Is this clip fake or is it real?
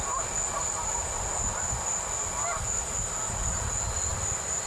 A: real